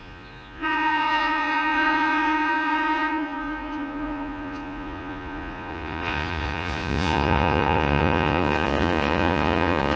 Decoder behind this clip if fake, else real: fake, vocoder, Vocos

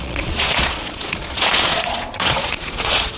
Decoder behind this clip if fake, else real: fake, vocoder, Vocos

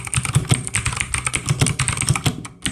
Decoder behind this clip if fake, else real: real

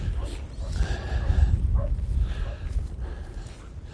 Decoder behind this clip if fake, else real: real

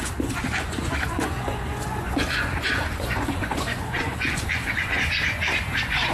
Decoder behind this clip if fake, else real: fake, vocoder, Vocos